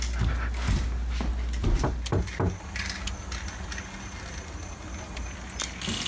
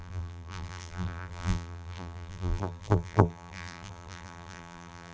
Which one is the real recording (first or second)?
first